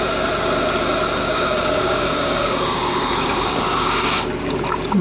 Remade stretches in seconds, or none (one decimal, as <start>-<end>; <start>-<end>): 1.2-4.2